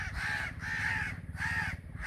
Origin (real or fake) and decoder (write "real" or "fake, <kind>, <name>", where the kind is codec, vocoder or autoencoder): real